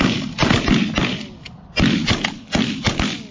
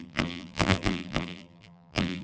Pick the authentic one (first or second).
first